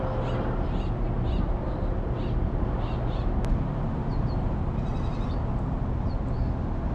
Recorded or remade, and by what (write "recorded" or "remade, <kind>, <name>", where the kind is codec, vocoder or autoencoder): recorded